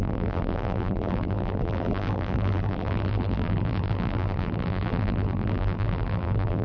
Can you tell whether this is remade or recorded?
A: remade